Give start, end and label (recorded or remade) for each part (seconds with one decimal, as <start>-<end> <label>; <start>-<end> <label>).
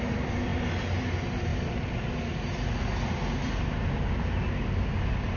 0.0-5.4 recorded